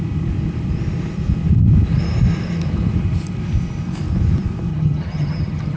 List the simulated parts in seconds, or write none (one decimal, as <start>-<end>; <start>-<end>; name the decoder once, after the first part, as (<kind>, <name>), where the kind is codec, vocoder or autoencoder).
4.7-5.8 (vocoder, HiFi-GAN)